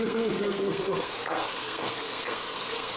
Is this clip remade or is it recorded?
remade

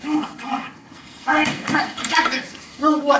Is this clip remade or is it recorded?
remade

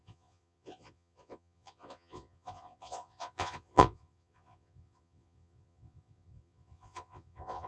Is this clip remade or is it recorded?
remade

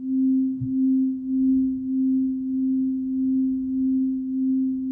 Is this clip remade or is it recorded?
remade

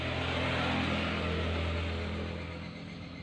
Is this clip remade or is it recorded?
recorded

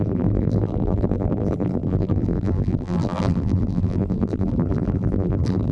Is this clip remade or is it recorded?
remade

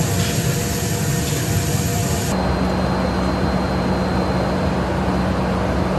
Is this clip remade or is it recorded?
recorded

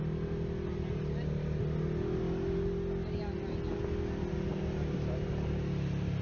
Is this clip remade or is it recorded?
recorded